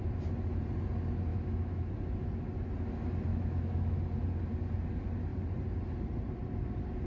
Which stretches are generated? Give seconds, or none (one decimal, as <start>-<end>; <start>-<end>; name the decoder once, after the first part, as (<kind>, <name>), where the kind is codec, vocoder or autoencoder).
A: 1.3-1.9 (autoencoder, DAC-VAE); 3.3-4.0